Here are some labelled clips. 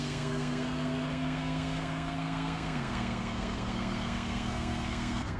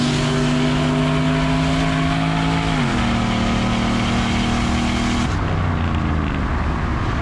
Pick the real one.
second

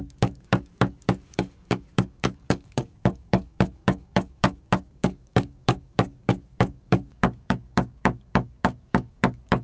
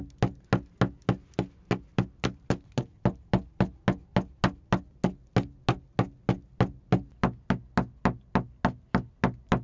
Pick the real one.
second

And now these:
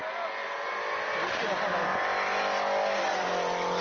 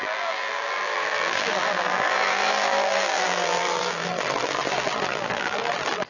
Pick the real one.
first